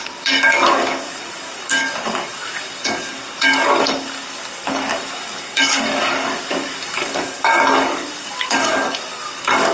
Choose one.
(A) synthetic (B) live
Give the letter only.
A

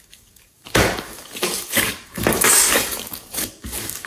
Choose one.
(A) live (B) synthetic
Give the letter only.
B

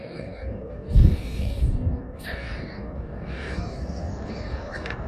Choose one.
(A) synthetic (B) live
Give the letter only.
A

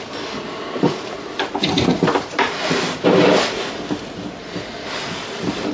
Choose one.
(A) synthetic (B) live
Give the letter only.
B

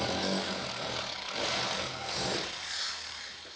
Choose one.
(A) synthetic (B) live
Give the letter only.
A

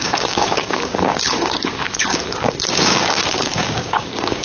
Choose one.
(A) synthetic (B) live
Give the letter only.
A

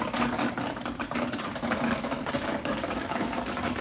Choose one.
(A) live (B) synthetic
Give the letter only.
B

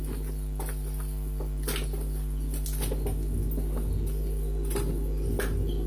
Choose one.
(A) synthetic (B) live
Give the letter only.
B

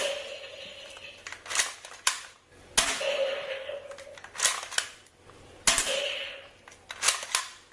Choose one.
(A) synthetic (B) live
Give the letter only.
B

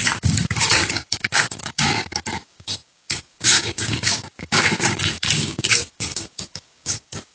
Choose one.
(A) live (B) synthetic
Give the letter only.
B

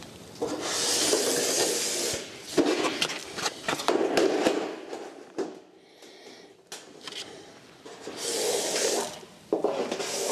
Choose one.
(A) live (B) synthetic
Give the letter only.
A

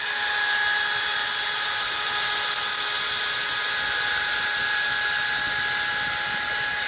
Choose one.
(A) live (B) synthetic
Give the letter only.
A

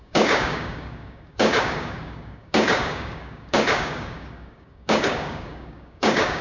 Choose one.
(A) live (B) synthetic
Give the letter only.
B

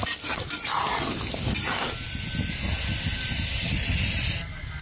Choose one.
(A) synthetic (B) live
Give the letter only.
B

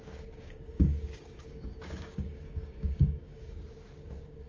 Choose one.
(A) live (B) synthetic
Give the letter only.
B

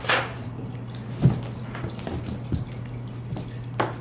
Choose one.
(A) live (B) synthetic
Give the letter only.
A